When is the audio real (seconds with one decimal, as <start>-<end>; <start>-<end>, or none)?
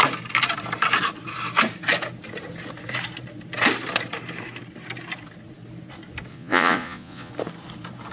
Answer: 0.0-6.3; 7.3-8.1